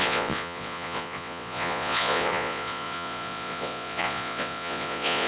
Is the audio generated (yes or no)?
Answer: yes